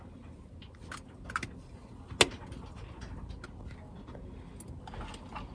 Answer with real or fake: real